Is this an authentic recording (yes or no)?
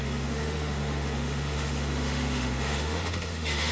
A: no